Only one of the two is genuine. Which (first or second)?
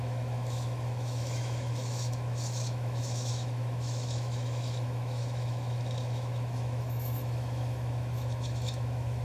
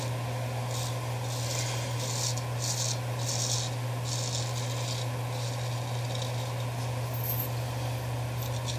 second